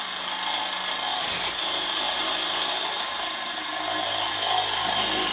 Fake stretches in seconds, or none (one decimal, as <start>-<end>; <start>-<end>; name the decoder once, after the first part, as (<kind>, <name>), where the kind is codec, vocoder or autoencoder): 1.1-4.3 (vocoder, BigVGAN v2)